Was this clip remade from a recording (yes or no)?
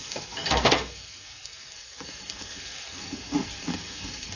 yes